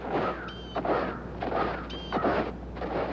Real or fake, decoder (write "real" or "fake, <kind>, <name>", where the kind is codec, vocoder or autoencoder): real